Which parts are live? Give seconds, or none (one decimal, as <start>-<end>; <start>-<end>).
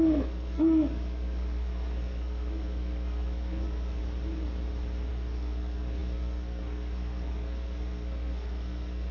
4.0-5.1